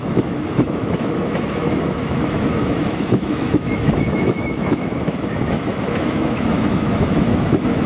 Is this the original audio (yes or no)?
no